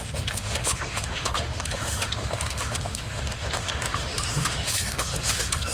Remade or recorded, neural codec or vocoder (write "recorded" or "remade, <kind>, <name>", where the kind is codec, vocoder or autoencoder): remade, autoencoder, DAC-VAE